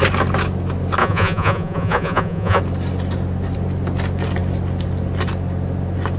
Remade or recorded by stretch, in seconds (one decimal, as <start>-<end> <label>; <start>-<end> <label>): 0.0-1.0 recorded; 1.0-2.6 remade; 2.6-6.2 recorded

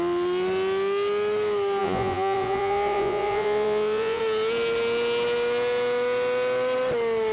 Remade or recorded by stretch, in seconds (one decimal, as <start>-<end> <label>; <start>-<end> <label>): 0.0-1.8 recorded; 1.8-4.2 remade; 4.2-7.3 recorded

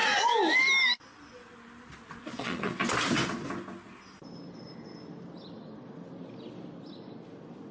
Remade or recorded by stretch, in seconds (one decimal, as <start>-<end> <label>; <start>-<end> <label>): 0.0-2.2 recorded; 2.2-2.8 remade; 2.8-7.7 recorded